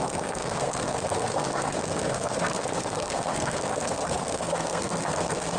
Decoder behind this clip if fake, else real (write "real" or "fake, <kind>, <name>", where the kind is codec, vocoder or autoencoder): fake, codec, SNAC